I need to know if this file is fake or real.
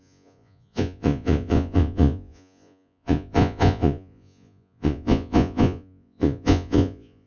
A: fake